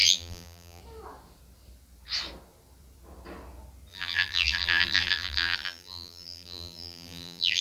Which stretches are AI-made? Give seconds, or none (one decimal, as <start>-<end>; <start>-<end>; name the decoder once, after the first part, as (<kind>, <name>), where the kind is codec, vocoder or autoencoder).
0.0-0.8 (vocoder, BigVGAN v2); 3.9-7.6